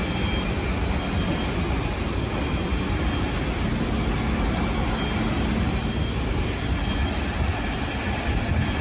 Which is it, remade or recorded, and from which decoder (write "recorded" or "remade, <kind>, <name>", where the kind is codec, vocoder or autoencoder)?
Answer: recorded